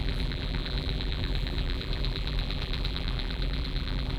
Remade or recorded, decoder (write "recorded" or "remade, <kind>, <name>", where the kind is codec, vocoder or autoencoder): remade, vocoder, BigVGAN v2